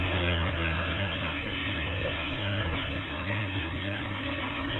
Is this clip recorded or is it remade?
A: remade